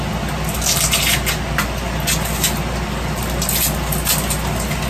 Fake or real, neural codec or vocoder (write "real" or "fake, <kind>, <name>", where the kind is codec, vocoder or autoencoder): real